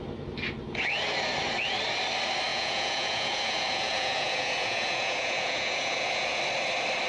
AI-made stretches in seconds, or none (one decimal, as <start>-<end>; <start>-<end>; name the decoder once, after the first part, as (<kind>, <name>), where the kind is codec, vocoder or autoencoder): 2.5-6.4 (vocoder, Vocos)